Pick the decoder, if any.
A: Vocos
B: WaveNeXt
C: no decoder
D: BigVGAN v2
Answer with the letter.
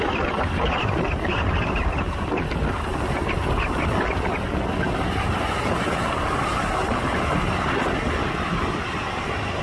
C